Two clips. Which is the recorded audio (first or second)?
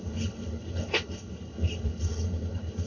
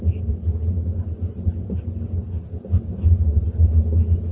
second